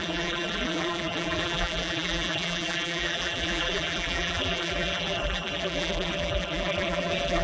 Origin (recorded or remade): remade